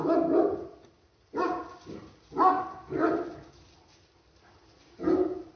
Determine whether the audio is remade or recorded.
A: recorded